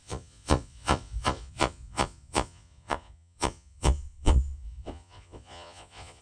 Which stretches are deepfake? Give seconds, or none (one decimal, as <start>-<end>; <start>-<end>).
0.0-6.2